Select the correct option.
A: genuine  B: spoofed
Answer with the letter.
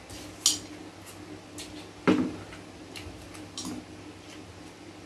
A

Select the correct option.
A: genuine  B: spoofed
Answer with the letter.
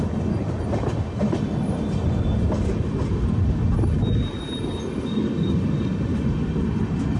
A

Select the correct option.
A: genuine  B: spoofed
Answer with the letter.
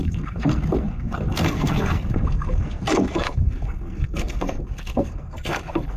B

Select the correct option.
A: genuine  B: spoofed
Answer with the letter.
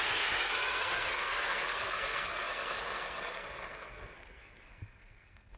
B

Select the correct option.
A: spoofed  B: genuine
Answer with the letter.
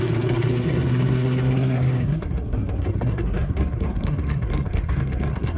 A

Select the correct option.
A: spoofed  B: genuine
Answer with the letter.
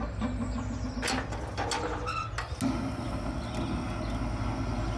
B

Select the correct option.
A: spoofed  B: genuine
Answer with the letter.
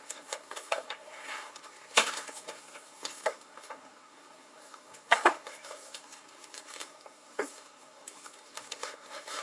A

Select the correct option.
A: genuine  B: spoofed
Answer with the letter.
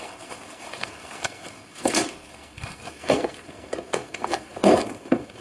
B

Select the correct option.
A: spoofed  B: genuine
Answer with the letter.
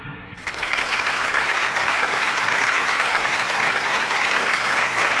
A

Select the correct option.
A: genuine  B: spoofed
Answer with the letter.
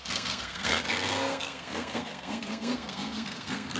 B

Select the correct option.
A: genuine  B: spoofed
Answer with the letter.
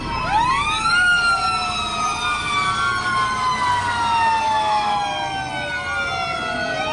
A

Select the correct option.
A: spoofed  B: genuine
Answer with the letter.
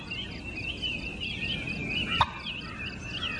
B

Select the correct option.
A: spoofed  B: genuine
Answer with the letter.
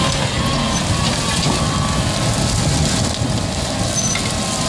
B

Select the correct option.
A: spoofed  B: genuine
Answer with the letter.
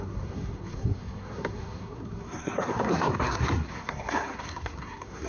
A